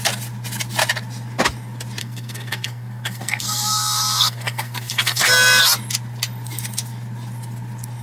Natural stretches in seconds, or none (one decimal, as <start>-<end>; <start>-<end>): 0.0-2.0; 5.2-8.0